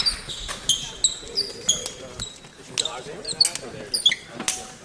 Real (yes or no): yes